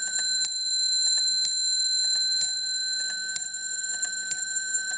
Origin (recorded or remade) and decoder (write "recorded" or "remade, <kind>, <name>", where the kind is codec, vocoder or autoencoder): remade, vocoder, BigVGAN v2